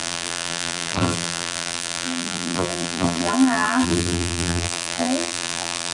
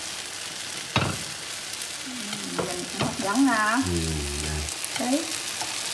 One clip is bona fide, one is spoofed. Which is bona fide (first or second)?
second